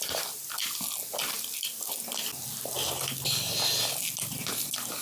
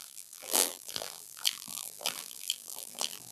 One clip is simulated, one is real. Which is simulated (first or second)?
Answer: second